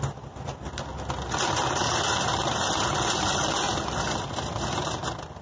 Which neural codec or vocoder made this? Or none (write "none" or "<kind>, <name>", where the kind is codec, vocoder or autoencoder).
none